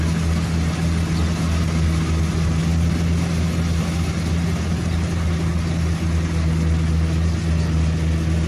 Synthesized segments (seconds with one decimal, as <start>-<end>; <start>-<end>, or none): none